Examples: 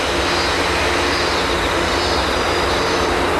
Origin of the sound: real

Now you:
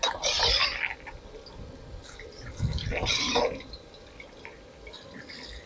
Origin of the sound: real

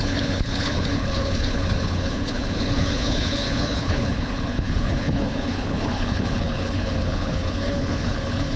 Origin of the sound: fake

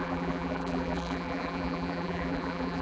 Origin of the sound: fake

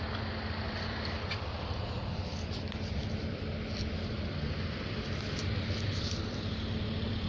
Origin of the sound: fake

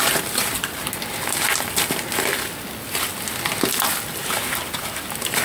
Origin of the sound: real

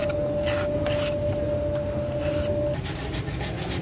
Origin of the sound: real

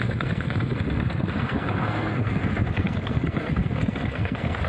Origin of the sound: fake